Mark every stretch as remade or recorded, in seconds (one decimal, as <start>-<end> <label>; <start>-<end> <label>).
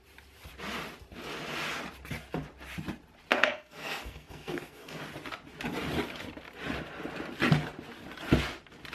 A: 0.0-3.3 recorded; 3.3-5.0 remade; 5.0-8.9 recorded